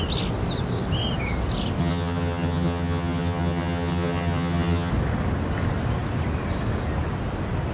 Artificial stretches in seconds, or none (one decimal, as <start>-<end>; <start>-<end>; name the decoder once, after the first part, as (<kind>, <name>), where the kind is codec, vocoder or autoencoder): 1.8-4.9 (vocoder, HiFi-GAN)

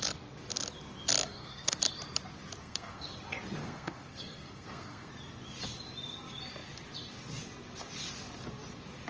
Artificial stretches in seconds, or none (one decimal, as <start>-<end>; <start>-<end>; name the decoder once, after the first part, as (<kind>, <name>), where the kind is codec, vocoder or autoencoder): 1.2-1.8 (codec, SNAC); 2.6-3.1; 3.6-5.1